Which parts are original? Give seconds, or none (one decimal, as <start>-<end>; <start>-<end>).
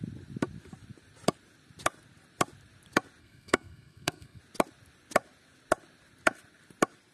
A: 0.0-3.2; 4.4-7.1